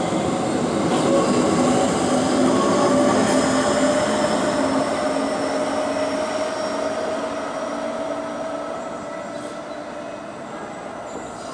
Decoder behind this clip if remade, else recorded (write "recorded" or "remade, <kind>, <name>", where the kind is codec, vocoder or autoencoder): recorded